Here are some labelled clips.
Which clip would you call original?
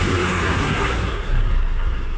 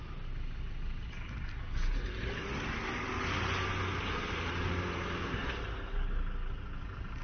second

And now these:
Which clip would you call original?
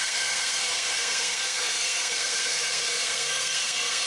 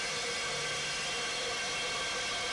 second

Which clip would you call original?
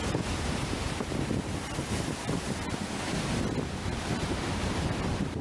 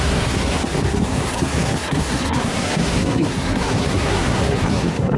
first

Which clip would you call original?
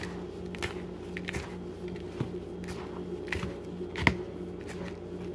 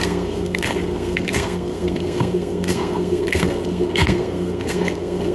first